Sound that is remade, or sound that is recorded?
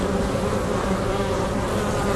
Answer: recorded